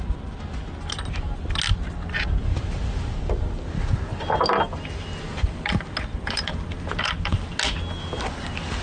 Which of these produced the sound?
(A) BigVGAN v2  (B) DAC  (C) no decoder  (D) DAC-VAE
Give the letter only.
C